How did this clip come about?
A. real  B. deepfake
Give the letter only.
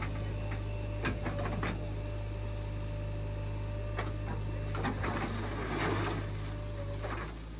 A